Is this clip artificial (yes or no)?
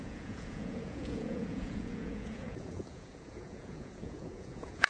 yes